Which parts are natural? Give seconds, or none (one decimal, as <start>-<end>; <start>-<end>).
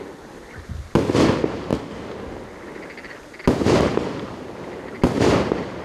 0.0-5.8